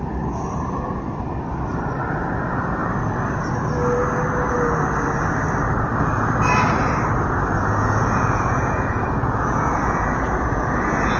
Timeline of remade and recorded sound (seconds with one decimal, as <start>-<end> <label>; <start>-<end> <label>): 0.0-7.7 recorded; 7.7-11.2 remade